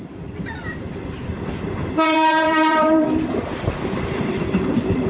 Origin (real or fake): fake